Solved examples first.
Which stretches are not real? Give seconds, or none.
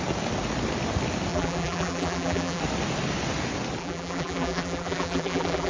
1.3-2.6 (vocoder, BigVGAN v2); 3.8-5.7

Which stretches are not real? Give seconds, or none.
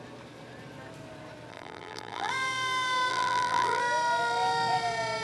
1.5-2.3 (vocoder, BigVGAN v2); 3.1-3.8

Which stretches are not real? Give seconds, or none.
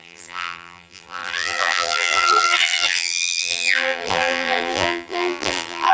0.0-5.9 (vocoder, BigVGAN v2)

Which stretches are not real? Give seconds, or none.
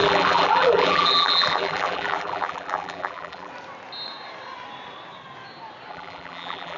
0.0-3.5 (vocoder, BigVGAN v2); 5.9-6.8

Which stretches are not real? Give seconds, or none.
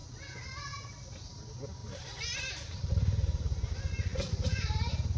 0.7-5.2 (vocoder, BigVGAN v2)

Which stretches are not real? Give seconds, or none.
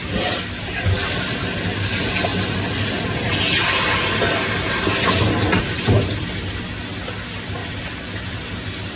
7.6-9.0 (vocoder, BigVGAN v2)